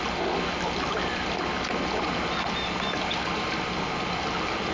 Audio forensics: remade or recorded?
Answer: recorded